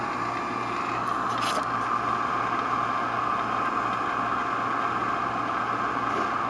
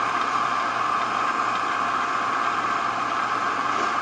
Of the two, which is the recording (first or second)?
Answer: first